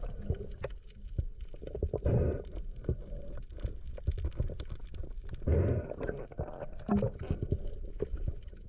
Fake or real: real